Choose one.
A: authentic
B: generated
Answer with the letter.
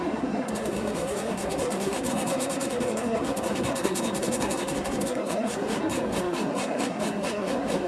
B